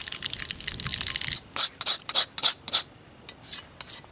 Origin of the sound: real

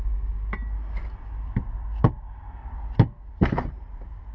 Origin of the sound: real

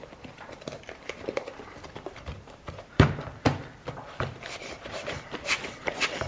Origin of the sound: fake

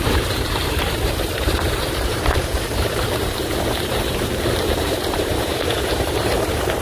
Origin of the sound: fake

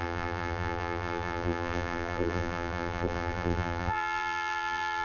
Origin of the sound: fake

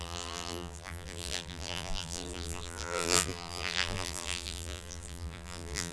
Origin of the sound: fake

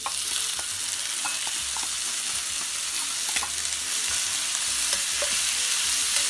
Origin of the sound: real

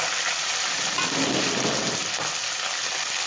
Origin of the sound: real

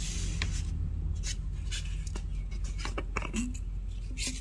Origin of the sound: real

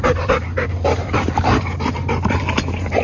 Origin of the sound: fake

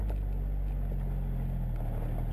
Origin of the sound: real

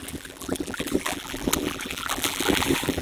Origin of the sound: fake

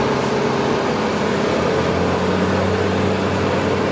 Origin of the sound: real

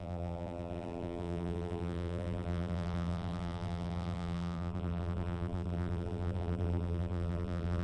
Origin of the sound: fake